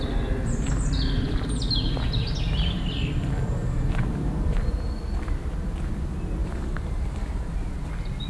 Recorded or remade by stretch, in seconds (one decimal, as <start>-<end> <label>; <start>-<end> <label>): 0.0-6.4 recorded; 6.4-7.9 remade; 7.9-8.3 recorded